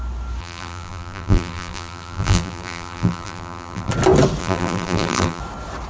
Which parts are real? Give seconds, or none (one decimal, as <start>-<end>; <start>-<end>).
0.0-0.4; 3.9-4.4; 5.4-5.9